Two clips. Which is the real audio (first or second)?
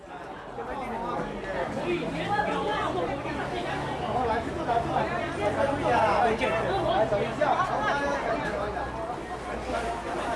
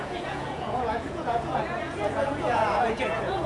first